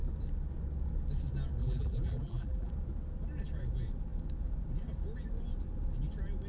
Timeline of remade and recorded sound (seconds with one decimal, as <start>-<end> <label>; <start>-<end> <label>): 0.0-1.6 recorded; 1.6-2.7 remade; 2.7-6.5 recorded